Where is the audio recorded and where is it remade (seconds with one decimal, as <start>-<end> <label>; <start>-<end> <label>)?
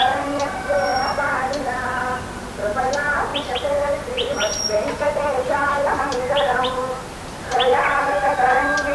0.0-8.9 recorded